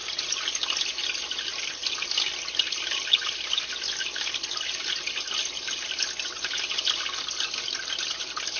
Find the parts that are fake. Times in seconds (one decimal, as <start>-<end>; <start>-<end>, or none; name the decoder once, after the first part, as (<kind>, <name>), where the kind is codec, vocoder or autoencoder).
none